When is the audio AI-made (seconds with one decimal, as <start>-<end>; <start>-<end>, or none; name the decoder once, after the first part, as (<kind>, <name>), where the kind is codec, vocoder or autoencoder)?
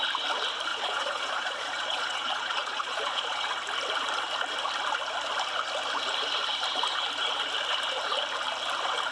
0.7-3.5 (vocoder, Vocos)